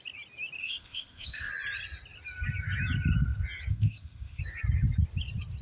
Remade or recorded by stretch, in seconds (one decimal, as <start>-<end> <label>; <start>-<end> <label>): 0.0-0.6 recorded; 0.6-1.5 remade; 1.5-3.7 recorded; 3.7-4.4 remade; 4.4-5.6 recorded